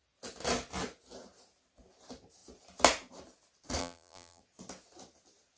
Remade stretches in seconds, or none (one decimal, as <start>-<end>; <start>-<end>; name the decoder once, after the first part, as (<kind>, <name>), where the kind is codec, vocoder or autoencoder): 3.8-4.4 (vocoder, BigVGAN v2)